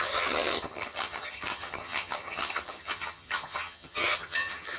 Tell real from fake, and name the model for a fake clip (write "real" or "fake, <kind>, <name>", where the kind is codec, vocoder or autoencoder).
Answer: fake, vocoder, HiFi-GAN